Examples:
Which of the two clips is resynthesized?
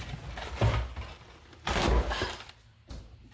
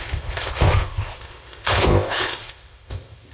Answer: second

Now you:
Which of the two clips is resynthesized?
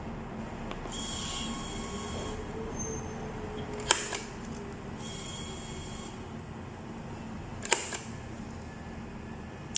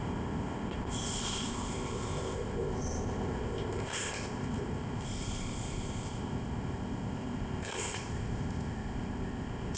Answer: second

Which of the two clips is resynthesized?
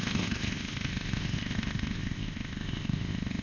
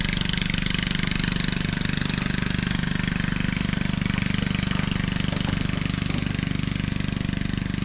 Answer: first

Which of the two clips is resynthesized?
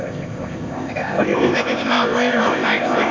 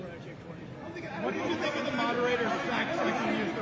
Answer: first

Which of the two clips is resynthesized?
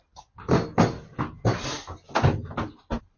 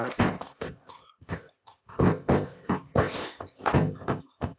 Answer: second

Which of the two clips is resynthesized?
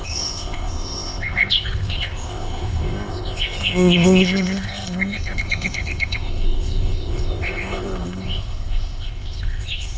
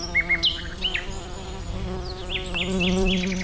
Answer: first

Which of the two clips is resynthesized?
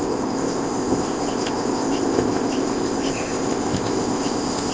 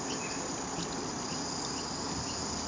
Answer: first